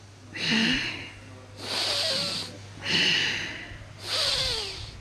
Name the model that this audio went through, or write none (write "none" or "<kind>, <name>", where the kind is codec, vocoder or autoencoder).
none